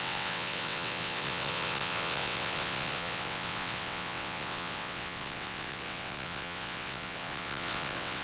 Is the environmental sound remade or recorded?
remade